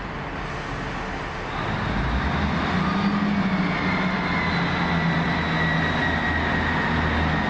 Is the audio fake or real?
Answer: real